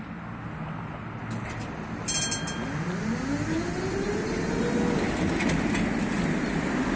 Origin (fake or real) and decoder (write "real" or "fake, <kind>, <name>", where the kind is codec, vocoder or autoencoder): real